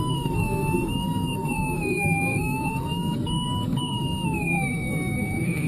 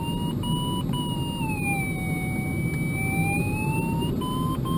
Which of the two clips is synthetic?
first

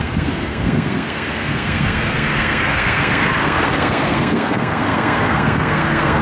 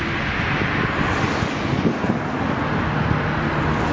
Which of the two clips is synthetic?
first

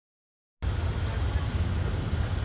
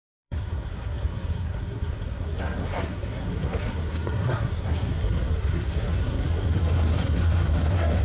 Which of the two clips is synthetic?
second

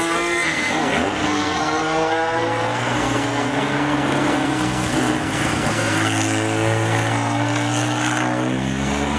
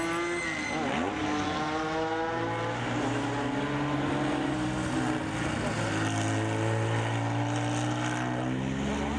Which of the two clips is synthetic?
first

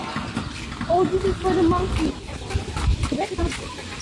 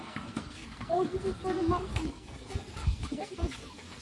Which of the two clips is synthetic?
second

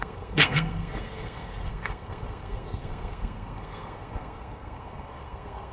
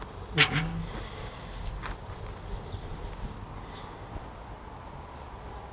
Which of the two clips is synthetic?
first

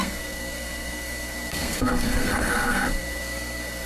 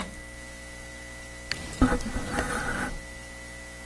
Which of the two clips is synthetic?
first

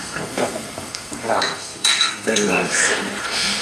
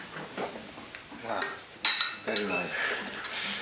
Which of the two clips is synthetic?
first